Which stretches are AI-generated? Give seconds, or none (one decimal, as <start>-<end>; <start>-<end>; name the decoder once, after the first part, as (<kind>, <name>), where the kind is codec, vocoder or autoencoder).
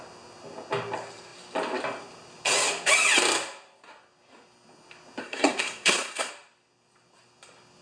5.2-6.3 (codec, SNAC)